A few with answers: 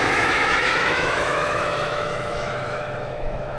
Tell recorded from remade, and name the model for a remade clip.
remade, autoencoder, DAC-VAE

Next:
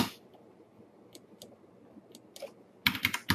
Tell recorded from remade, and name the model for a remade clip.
recorded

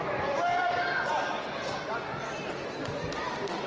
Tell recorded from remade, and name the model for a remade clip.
recorded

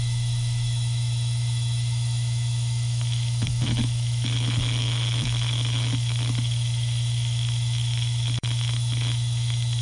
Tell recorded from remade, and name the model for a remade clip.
remade, autoencoder, DAC-VAE